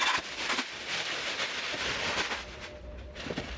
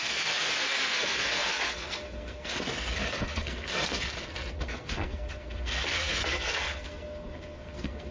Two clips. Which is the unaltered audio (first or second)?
first